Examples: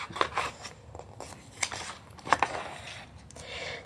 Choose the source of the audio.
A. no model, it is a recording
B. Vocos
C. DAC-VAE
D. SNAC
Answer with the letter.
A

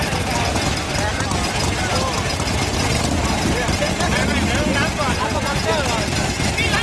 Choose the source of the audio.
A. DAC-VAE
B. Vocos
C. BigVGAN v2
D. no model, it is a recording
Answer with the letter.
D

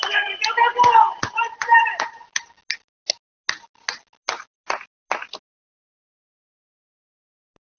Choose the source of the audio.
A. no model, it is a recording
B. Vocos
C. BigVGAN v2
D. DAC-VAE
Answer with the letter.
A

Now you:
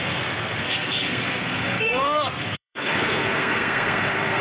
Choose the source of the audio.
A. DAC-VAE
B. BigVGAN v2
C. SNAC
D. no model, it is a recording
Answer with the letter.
C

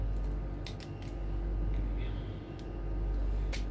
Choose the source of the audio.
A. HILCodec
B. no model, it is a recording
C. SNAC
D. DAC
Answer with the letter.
B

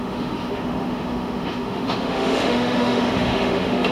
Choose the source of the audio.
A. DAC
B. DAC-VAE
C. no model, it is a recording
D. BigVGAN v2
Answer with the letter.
B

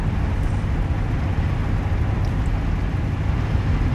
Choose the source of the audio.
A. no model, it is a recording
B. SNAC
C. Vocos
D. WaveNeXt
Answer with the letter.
A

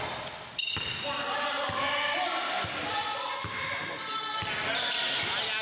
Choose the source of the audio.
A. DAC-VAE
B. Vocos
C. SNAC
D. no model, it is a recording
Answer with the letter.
D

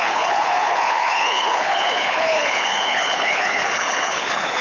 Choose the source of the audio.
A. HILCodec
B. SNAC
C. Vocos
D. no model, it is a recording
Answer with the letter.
A